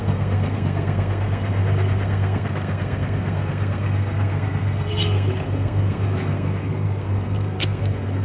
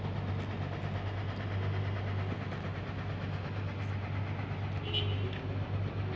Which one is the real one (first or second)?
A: second